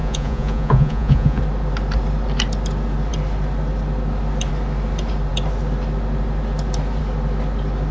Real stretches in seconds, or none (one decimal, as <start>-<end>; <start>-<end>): 1.4-7.9